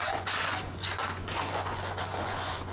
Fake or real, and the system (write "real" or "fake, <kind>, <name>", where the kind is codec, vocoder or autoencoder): fake, vocoder, Vocos